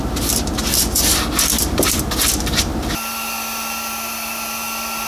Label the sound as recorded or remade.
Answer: recorded